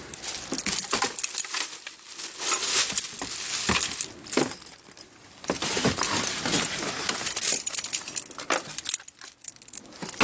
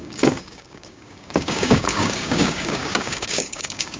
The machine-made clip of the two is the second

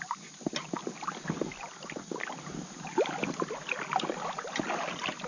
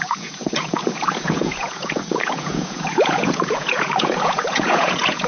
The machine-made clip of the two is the second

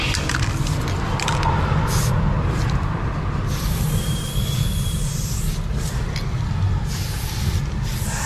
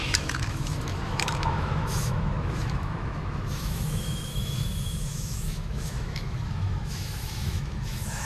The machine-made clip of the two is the second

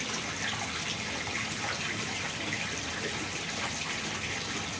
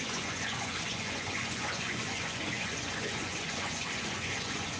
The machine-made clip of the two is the second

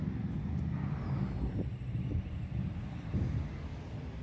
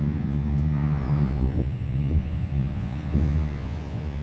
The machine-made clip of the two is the second